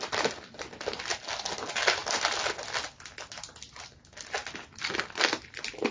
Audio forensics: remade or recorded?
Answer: recorded